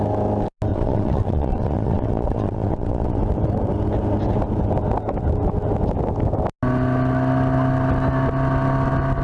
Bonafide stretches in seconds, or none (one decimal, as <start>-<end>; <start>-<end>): 0.0-0.7; 3.2-9.2